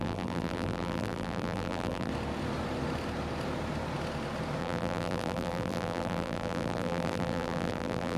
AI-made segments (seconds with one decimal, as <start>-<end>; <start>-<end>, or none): 0.0-2.1; 4.6-8.2

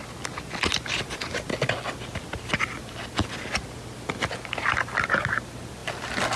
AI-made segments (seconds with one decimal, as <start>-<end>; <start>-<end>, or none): none

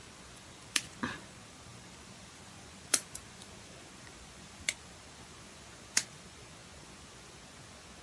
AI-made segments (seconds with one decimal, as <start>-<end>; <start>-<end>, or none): 0.0-8.0

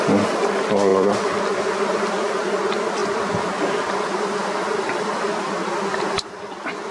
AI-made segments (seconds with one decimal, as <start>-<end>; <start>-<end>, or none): none

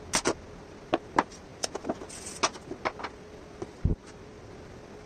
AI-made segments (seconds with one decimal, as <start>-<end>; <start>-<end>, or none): 3.9-4.5

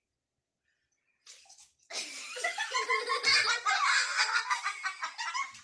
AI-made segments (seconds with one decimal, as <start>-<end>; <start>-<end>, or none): 3.9-4.6